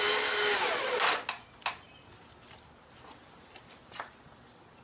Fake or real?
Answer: real